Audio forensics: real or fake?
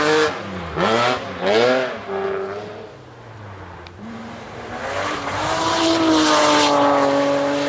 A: real